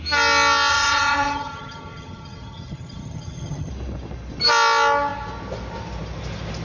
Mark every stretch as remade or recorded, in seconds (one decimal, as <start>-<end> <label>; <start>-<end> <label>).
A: 0.0-0.7 recorded; 0.7-3.7 remade; 3.7-6.6 recorded